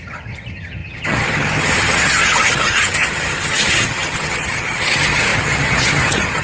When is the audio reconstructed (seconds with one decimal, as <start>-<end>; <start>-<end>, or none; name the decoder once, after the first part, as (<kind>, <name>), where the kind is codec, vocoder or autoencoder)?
0.0-6.4 (vocoder, HiFi-GAN)

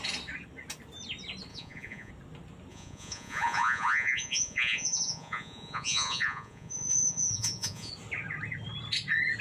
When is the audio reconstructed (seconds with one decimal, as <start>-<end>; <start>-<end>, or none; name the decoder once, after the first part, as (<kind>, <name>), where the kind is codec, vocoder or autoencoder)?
1.5-2.1 (vocoder, Vocos); 2.7-7.9